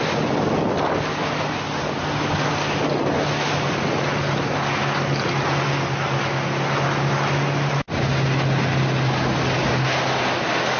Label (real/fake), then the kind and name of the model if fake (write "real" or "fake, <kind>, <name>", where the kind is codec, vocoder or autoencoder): real